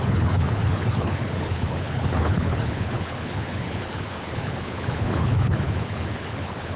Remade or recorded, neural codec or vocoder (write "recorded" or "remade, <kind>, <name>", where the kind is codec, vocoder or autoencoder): remade, codec, HILCodec